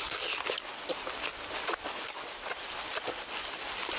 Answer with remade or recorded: recorded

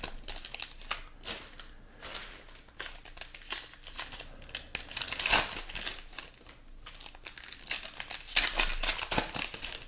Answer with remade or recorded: recorded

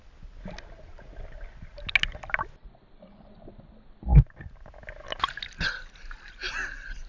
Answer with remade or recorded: recorded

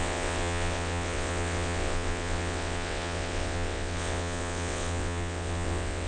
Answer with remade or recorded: remade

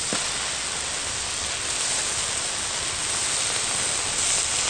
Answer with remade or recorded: recorded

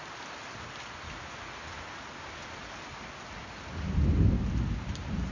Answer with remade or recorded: recorded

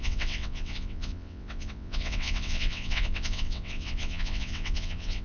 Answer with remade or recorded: remade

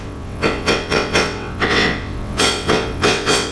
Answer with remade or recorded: remade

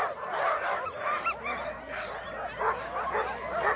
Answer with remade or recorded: recorded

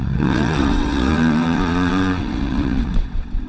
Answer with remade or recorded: remade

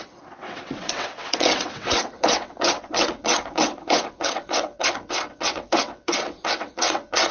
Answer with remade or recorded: remade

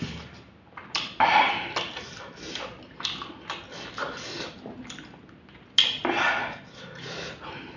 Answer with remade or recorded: recorded